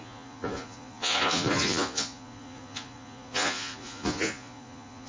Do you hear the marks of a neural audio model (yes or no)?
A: yes